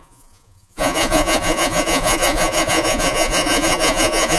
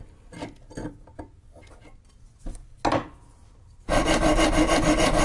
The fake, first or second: first